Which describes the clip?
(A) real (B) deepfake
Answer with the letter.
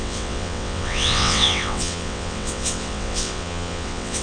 B